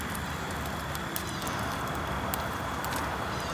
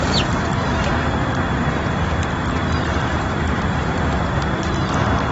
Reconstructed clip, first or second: second